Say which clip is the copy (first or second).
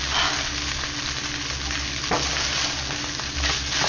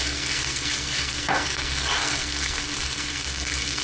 second